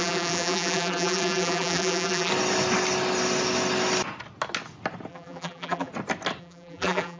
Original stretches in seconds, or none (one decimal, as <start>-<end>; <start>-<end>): 2.3-5.1; 5.9-6.4